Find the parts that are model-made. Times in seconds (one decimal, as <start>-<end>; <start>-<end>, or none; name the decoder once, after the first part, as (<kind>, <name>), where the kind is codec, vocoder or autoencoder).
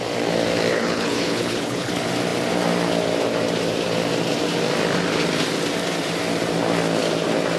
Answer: 0.7-1.9 (codec, HILCodec)